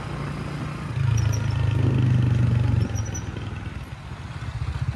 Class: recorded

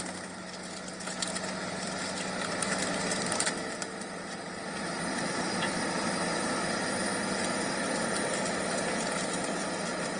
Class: recorded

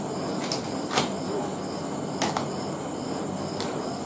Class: recorded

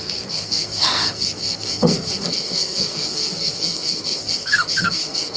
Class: remade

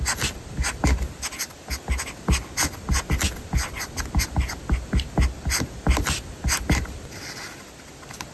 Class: recorded